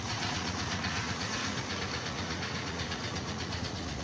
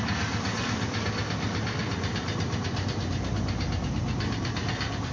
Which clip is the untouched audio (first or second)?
second